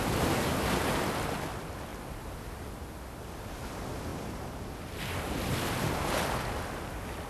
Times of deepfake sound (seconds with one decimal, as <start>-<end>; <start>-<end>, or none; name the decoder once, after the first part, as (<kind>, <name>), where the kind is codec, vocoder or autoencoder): none